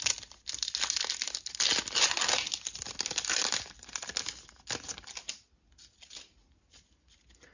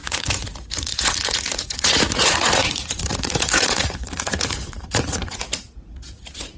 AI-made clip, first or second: second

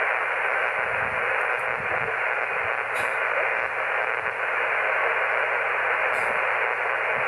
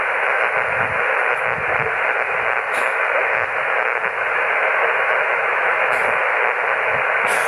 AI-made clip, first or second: second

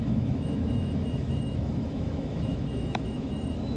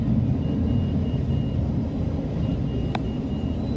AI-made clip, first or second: first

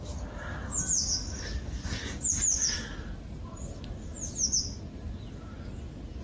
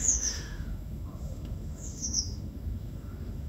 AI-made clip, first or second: second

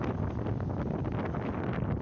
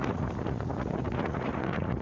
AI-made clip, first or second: second